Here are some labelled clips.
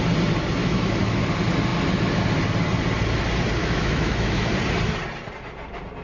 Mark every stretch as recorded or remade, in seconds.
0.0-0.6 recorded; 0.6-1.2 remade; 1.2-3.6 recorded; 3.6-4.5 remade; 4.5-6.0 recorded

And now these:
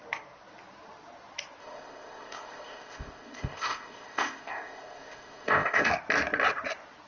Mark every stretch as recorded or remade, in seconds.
0.0-1.6 recorded; 1.6-5.9 remade; 5.9-7.1 recorded

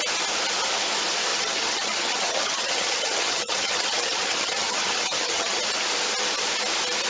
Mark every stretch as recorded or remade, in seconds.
0.0-1.3 recorded; 1.3-5.6 remade; 5.6-7.1 recorded

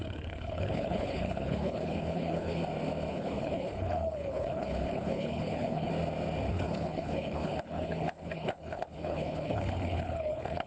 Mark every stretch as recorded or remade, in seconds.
0.0-2.6 remade; 2.6-3.1 recorded; 3.1-5.9 remade; 5.9-6.5 recorded; 6.5-10.7 remade

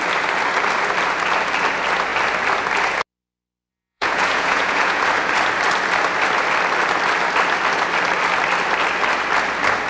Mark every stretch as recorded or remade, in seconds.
0.0-3.7 recorded; 3.7-5.0 remade; 5.0-9.9 recorded

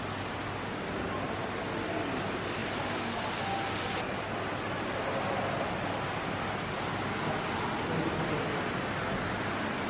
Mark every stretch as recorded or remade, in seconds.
0.0-9.9 recorded

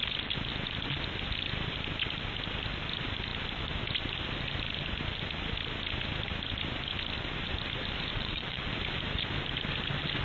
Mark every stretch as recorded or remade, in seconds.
0.0-8.1 recorded; 8.1-8.7 remade; 8.7-10.2 recorded

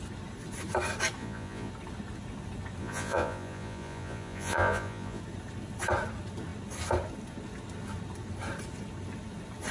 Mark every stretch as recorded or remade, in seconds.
0.0-1.2 recorded; 1.2-1.7 remade; 1.7-2.8 recorded; 2.8-5.2 remade; 5.2-9.7 recorded